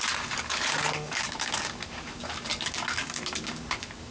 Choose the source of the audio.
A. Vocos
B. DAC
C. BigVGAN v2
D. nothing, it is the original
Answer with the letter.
B